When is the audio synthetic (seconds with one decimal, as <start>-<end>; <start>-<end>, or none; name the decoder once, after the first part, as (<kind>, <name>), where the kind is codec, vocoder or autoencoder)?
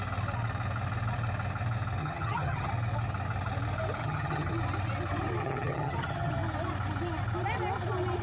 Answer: 2.0-2.7 (vocoder, HiFi-GAN); 4.0-4.5; 5.4-6.3